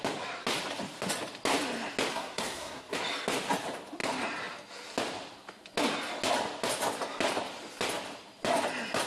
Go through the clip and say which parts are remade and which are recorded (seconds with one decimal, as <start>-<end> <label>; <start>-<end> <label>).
0.0-2.1 recorded; 2.1-3.0 remade; 3.0-9.1 recorded